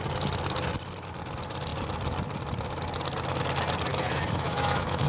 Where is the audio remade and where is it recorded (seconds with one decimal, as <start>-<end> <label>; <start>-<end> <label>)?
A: 0.0-3.9 recorded; 3.9-5.1 remade